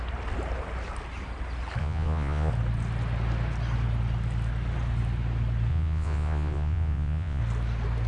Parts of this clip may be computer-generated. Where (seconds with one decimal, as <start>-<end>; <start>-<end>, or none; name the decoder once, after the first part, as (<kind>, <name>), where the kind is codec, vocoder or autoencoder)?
1.8-2.5 (vocoder, Vocos); 5.7-7.4